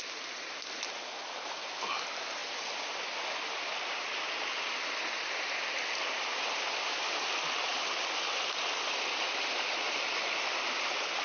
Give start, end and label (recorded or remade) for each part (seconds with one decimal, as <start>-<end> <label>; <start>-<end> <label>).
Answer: 0.0-11.2 recorded